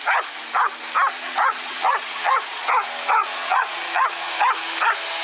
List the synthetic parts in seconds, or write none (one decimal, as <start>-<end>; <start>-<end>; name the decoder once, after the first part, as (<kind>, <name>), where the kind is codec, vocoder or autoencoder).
1.1-2.7 (vocoder, Vocos); 3.2-4.3